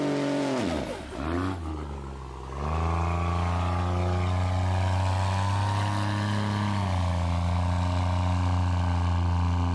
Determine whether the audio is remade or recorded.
recorded